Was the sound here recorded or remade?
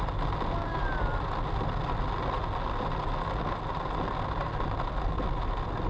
recorded